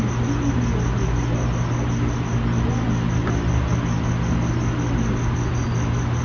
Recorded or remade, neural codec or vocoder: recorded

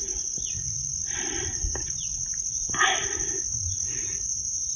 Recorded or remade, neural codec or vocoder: recorded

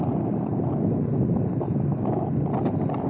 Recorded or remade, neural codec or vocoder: recorded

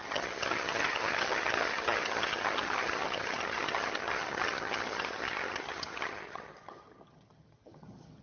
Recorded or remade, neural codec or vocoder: remade, vocoder, HiFi-GAN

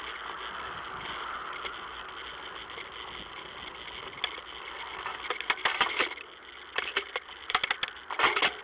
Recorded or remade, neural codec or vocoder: recorded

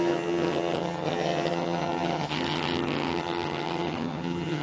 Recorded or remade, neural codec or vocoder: remade, vocoder, HiFi-GAN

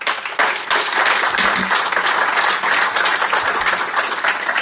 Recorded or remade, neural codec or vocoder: recorded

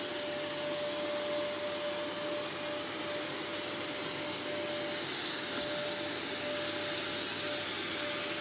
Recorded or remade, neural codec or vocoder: recorded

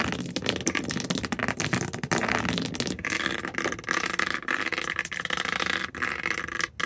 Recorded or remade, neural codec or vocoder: recorded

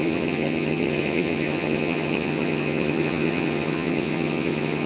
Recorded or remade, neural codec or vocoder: remade, vocoder, HiFi-GAN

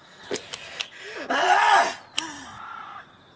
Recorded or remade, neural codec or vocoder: recorded